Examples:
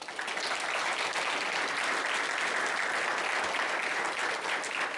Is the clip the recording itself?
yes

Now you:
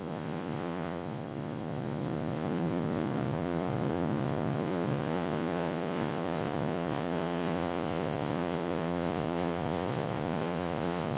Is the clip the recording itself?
no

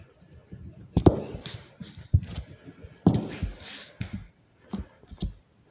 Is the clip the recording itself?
yes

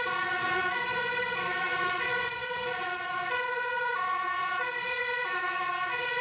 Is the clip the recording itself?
no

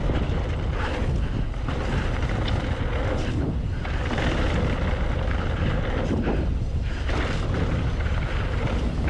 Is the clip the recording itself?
yes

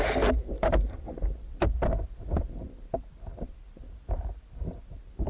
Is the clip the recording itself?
yes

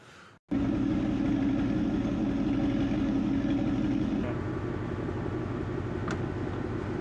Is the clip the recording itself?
yes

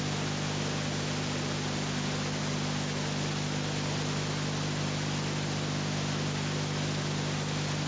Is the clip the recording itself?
yes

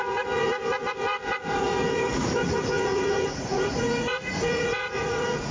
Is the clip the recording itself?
no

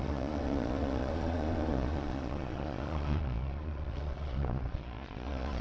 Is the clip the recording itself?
no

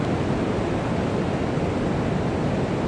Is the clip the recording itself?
yes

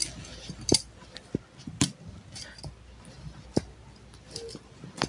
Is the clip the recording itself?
yes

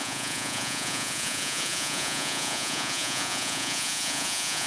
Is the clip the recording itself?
no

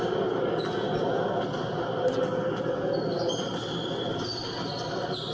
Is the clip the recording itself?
yes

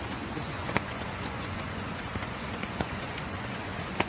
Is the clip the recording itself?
no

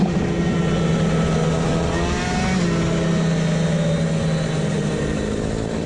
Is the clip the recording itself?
yes